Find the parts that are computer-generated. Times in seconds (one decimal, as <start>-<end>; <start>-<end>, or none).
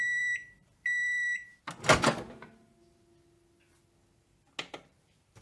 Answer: 0.0-1.5; 4.7-5.4